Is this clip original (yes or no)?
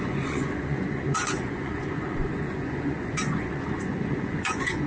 no